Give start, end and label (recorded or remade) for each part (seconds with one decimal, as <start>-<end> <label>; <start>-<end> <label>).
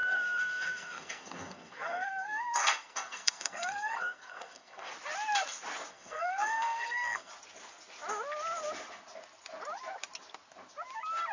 0.0-4.9 remade; 4.9-5.9 recorded; 5.9-7.3 remade; 7.3-11.3 recorded